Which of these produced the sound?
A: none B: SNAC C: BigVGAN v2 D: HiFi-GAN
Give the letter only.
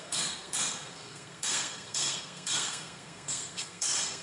B